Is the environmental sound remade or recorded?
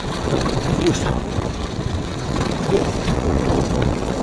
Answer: remade